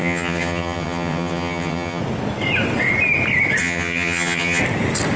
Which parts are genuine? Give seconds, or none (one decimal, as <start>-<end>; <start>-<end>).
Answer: 2.0-3.6; 4.6-5.2